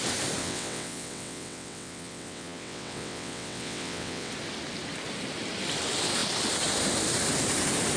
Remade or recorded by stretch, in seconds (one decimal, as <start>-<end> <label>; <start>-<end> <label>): 0.0-0.4 recorded; 0.4-4.3 remade; 4.3-8.0 recorded